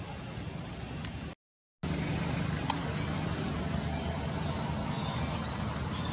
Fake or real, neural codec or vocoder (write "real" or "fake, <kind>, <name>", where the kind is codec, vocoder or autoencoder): real